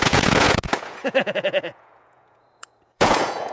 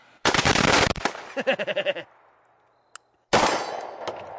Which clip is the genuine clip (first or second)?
second